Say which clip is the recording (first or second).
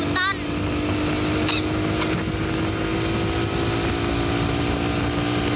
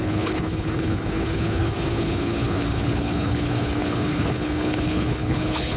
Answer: first